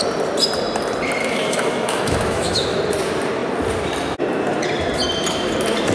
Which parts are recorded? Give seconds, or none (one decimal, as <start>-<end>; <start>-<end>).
0.0-1.2; 2.8-5.9